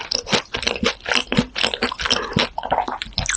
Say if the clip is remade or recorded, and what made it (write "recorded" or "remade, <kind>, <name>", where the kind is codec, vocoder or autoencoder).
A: recorded